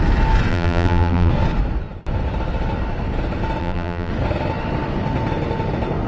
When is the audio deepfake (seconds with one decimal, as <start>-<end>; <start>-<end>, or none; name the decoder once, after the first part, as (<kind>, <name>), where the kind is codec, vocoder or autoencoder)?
0.5-1.3 (vocoder, BigVGAN v2); 3.6-4.1

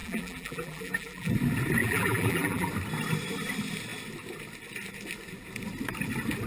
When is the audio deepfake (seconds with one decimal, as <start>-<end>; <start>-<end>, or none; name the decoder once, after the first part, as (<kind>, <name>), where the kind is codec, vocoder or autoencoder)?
0.0-1.3 (vocoder, BigVGAN v2); 1.8-2.7

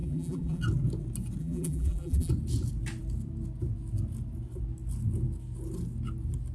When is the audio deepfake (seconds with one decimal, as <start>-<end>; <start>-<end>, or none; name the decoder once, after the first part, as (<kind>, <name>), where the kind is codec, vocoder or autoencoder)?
0.0-0.6 (vocoder, BigVGAN v2); 1.4-2.3

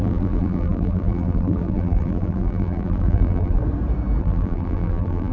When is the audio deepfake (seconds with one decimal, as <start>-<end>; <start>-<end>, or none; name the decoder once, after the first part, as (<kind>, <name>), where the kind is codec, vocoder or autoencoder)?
0.0-3.6 (vocoder, BigVGAN v2); 4.2-5.3

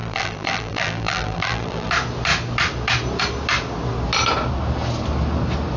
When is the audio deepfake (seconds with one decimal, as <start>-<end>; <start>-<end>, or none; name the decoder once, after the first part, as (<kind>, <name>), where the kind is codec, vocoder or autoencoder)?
0.0-1.9 (vocoder, BigVGAN v2)